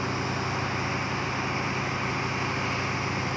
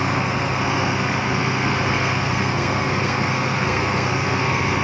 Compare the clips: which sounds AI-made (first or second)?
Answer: second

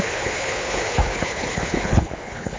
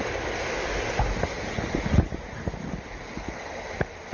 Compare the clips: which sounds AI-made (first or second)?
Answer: first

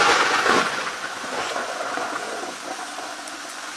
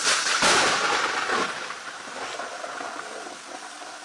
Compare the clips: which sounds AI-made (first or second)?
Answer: first